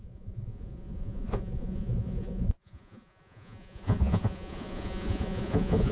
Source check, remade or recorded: remade